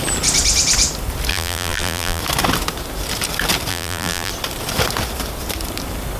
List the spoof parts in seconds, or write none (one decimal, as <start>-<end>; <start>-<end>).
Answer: 1.3-2.2; 3.7-4.3